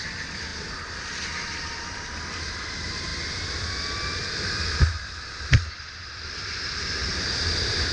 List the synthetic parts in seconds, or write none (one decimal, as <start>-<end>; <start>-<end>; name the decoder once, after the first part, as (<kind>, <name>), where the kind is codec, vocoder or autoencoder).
7.0-7.9 (vocoder, BigVGAN v2)